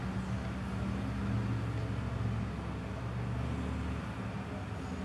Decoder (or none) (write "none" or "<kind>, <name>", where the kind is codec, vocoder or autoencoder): none